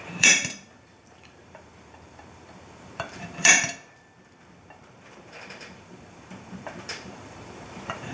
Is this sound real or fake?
fake